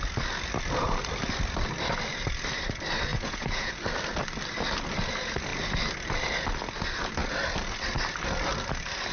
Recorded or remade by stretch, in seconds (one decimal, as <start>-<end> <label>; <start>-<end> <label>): 0.0-3.1 recorded; 3.1-3.7 remade; 3.7-9.1 recorded